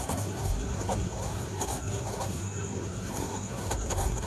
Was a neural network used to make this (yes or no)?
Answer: yes